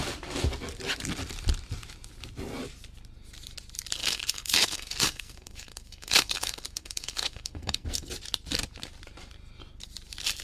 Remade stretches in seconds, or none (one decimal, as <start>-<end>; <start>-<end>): 4.0-8.1